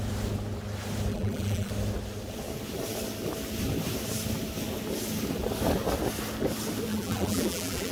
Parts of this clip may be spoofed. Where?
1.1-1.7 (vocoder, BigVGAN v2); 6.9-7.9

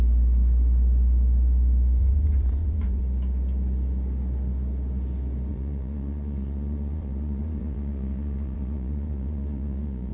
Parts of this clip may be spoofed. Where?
2.0-3.0 (vocoder, Vocos); 5.5-10.1